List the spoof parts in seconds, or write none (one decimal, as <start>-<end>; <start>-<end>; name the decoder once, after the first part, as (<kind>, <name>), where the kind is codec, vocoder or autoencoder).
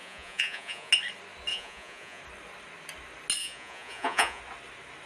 0.0-0.9 (vocoder, Vocos); 1.5-2.2; 3.4-4.4